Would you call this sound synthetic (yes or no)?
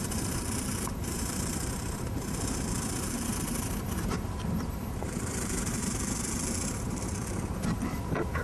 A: yes